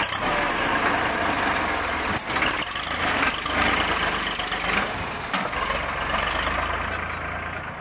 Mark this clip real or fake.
real